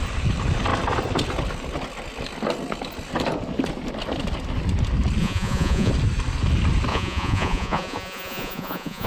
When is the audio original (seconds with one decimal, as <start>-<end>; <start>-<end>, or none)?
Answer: 0.0-5.2; 5.9-6.9